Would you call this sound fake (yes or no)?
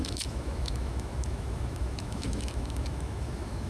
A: yes